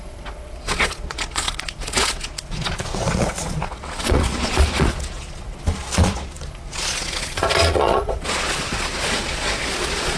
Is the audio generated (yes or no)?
yes